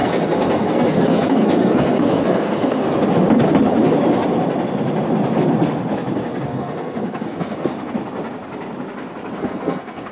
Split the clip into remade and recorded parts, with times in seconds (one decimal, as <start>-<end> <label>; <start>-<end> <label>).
0.0-2.8 remade; 2.8-6.4 recorded; 6.4-7.7 remade; 7.7-9.4 recorded; 9.4-10.1 remade